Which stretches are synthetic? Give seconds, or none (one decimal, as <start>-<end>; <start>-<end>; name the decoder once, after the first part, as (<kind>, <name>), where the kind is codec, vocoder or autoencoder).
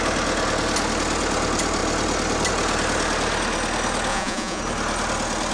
4.1-4.6 (vocoder, Vocos)